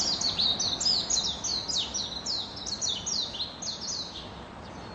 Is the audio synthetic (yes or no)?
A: no